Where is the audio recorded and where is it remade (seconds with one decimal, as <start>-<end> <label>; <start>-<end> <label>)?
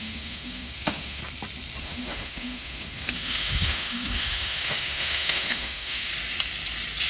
0.0-1.2 remade; 1.2-1.8 recorded; 1.8-6.1 remade; 6.1-7.1 recorded